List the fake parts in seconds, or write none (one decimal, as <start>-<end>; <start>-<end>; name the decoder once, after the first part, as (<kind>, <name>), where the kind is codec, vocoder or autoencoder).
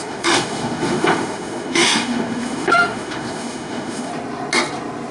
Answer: 0.0-4.1 (autoencoder, DAC-VAE)